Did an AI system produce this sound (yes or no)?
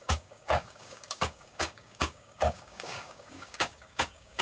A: yes